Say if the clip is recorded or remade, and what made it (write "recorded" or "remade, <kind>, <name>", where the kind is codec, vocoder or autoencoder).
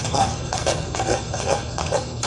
remade, codec, SNAC